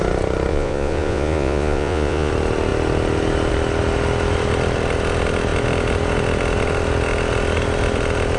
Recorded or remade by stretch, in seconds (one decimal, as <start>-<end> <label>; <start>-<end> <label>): 0.0-0.5 recorded; 0.5-2.3 remade; 2.3-8.4 recorded